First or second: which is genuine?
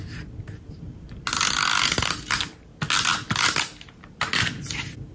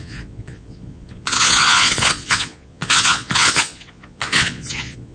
first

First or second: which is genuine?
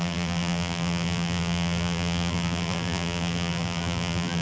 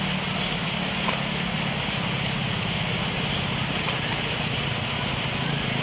second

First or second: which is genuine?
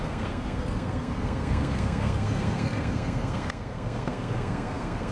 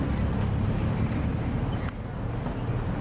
second